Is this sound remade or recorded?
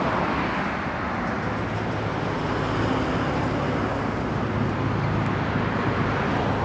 recorded